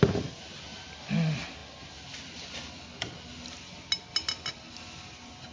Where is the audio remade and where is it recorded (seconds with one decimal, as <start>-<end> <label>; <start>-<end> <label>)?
0.0-5.5 recorded